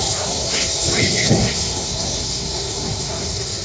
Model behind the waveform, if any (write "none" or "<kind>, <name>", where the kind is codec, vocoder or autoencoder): codec, SNAC